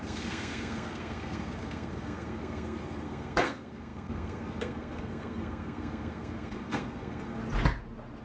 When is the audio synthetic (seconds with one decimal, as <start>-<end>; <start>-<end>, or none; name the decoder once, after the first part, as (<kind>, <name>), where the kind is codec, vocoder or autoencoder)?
0.0-7.4 (codec, SNAC)